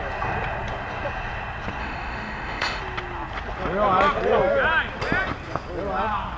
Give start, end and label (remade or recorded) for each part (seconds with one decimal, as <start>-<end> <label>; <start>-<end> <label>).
0.0-1.8 recorded; 1.8-2.8 remade; 2.8-6.4 recorded